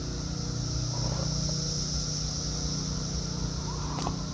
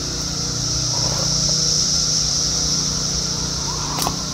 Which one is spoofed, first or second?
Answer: second